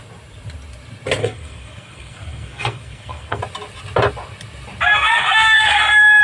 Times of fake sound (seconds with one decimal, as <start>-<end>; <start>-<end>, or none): 1.2-3.4; 4.9-6.2